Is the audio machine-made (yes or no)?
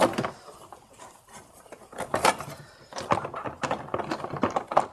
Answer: no